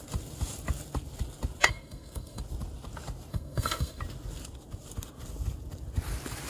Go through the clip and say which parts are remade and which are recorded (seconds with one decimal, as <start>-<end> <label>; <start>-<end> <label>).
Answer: 0.0-1.6 recorded; 1.6-2.4 remade; 2.4-3.3 recorded; 3.3-4.0 remade; 4.0-6.5 recorded